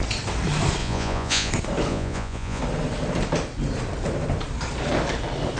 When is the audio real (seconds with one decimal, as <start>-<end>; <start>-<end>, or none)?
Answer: 0.0-0.8; 1.5-1.9; 2.6-5.6